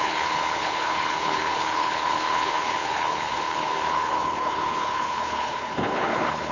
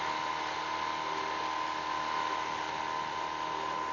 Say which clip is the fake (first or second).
first